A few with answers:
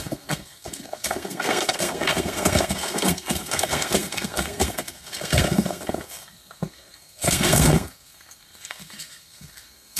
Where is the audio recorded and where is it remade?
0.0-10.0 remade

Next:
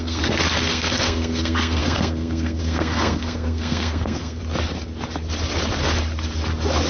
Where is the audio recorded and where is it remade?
0.0-4.4 remade; 4.4-6.9 recorded

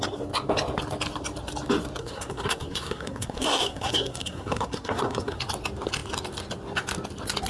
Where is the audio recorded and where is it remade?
0.0-2.0 recorded; 2.0-5.4 remade; 5.4-7.5 recorded

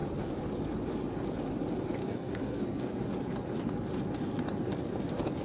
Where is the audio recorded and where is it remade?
0.0-2.0 recorded; 2.0-2.9 remade; 2.9-5.4 recorded

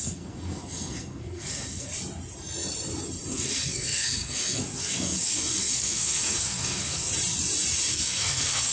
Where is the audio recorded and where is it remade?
0.0-1.9 remade; 1.9-3.3 recorded; 3.3-7.1 remade; 7.1-7.9 recorded; 7.9-8.7 remade

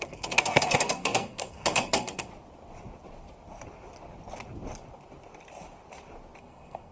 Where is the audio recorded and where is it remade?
0.0-2.3 remade; 2.3-6.4 recorded; 6.4-6.9 remade

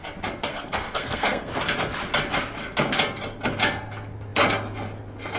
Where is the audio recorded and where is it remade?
0.0-0.5 recorded; 0.5-1.5 remade; 1.5-5.4 recorded

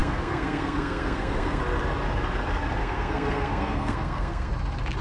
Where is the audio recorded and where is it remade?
0.0-1.6 remade; 1.6-2.8 recorded; 2.8-4.5 remade; 4.5-5.0 recorded